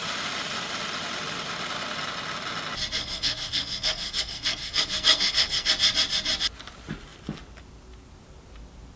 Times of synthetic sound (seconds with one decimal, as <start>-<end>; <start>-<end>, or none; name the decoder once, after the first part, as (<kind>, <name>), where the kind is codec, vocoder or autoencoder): 3.0-5.7 (codec, SNAC)